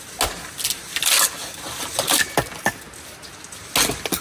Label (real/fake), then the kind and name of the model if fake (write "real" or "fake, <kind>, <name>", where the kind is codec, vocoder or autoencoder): real